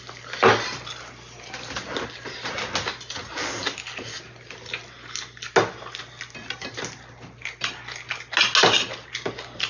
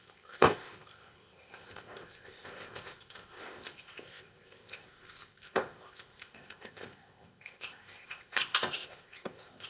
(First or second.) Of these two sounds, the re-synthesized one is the second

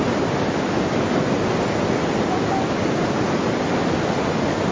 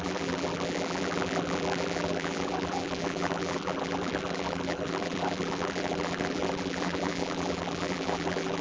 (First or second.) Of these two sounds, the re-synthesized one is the second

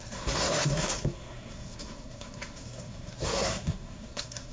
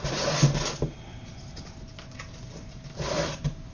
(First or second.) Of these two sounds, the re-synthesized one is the first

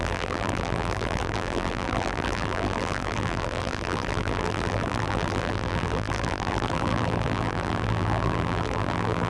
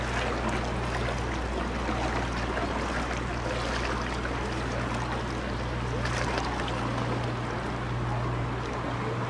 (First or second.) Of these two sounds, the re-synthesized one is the first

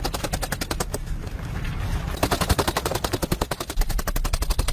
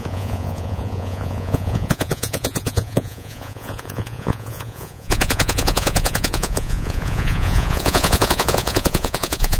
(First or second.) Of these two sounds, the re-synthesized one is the second